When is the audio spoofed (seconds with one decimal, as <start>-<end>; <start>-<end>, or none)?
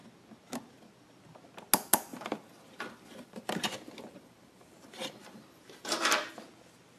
2.1-6.3